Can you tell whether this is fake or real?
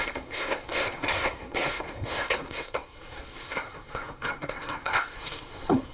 fake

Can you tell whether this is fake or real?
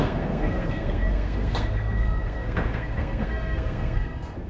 fake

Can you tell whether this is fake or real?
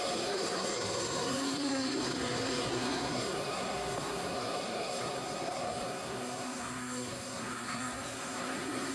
fake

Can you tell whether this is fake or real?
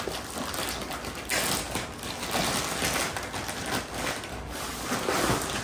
real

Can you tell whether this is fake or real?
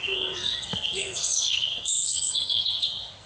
fake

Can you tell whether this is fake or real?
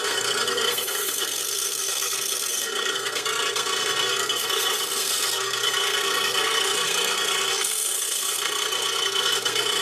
fake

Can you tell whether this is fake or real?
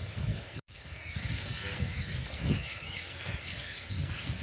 fake